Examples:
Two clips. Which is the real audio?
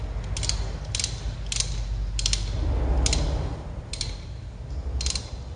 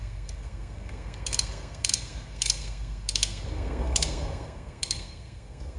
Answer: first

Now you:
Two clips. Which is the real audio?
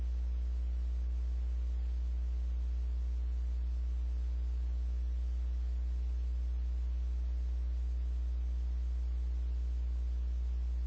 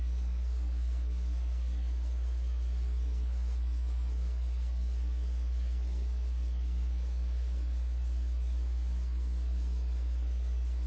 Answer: first